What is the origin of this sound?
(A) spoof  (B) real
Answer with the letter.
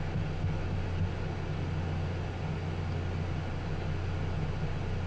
B